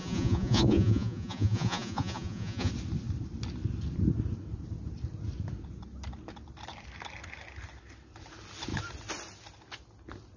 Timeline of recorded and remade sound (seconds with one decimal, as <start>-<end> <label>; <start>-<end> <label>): 0.0-2.7 remade; 2.7-10.4 recorded